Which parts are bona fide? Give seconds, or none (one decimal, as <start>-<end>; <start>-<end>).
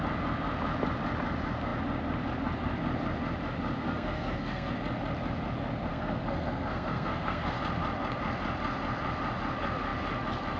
0.0-3.8; 4.7-5.9; 7.6-10.6